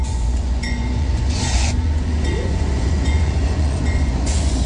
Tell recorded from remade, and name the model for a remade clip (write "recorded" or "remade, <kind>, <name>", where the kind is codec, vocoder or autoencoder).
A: remade, vocoder, Vocos